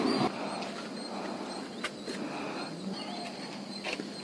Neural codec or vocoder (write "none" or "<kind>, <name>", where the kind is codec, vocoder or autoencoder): none